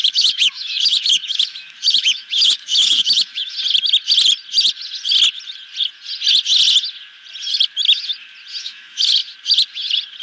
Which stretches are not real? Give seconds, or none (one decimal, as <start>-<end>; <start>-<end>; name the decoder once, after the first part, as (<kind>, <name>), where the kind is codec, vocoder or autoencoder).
0.0-3.4 (autoencoder, DAC-VAE); 8.6-9.2